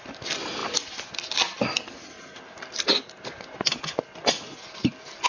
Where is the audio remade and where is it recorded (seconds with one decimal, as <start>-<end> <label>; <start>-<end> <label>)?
0.0-5.3 recorded